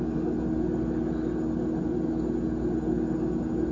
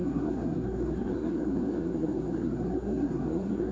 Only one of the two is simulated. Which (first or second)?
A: second